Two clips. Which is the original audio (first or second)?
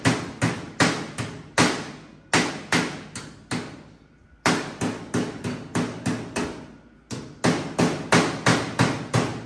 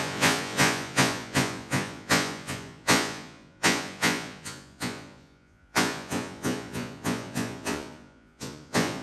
first